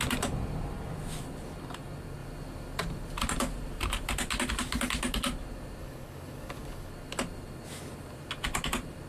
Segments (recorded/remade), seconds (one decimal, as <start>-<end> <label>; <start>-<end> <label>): 0.0-5.8 recorded; 5.8-6.9 remade; 6.9-9.1 recorded